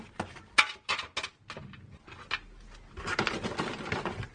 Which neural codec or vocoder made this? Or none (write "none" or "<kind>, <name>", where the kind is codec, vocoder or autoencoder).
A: none